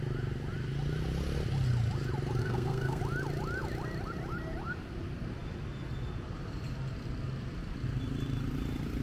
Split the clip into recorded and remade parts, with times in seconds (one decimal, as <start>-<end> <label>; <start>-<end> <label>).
0.0-2.4 recorded; 2.4-3.0 remade; 3.0-9.0 recorded

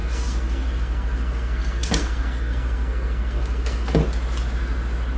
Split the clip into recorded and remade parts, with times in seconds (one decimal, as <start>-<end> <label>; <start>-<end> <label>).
0.0-4.0 remade; 4.0-5.2 recorded

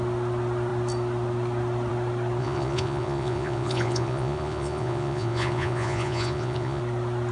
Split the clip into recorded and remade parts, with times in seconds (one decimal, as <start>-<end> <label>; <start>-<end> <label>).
0.0-2.4 recorded; 2.4-6.8 remade; 6.8-7.3 recorded

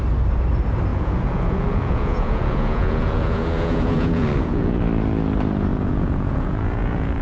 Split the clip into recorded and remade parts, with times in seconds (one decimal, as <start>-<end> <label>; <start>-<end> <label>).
0.0-0.9 recorded; 0.9-4.8 remade; 4.8-5.7 recorded; 5.7-7.2 remade

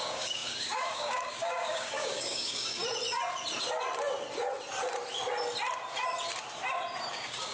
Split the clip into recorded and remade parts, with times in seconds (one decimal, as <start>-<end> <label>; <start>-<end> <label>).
0.0-2.8 remade; 2.8-7.1 recorded; 7.1-7.5 remade

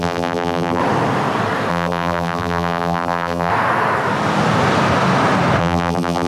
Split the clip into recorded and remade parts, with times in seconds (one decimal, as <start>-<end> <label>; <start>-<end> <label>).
0.0-0.8 remade; 0.8-1.7 recorded; 1.7-3.5 remade; 3.5-5.6 recorded; 5.6-6.3 remade

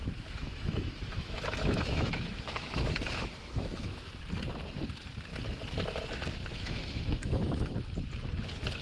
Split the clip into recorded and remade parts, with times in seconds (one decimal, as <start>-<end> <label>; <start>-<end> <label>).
0.0-4.2 remade; 4.2-6.5 recorded; 6.5-7.7 remade; 7.7-8.8 recorded

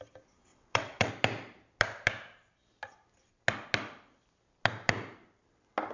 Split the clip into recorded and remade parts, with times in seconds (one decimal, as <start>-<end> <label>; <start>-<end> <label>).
0.0-0.5 recorded; 0.5-1.1 remade; 1.1-5.9 recorded